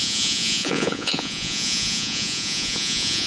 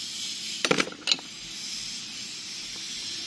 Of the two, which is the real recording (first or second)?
second